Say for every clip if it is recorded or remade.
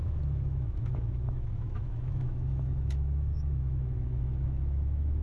remade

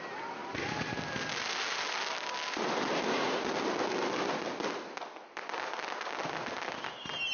recorded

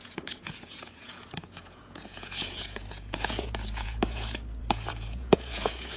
remade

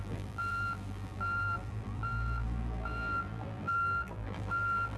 remade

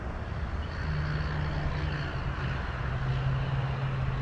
recorded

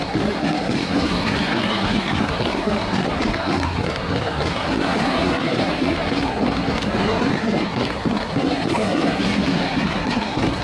remade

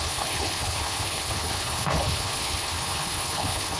remade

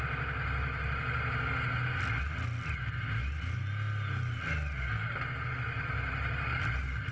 recorded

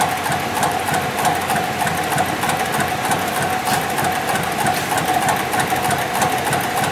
recorded